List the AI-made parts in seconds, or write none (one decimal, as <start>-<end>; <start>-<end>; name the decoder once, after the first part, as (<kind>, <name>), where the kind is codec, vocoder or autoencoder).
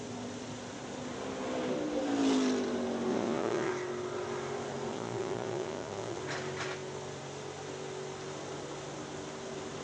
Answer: 3.1-3.7 (vocoder, Vocos); 4.9-6.2